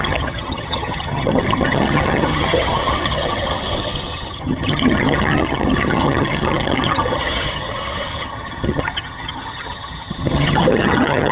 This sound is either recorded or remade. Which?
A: remade